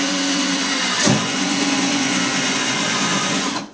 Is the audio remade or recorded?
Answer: remade